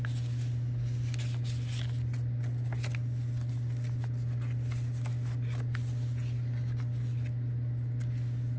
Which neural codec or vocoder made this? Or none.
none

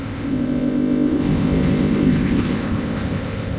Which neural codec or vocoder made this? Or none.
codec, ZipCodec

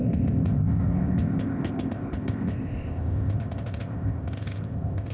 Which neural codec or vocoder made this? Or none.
codec, ZipCodec